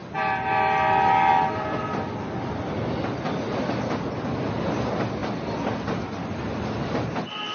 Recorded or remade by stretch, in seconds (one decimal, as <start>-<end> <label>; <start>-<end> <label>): 0.0-7.5 recorded